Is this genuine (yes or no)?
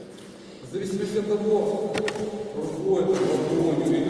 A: yes